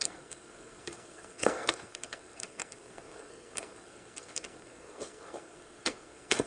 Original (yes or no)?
no